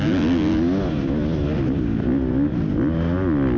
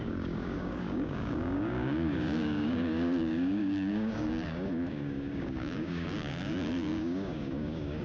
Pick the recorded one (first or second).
first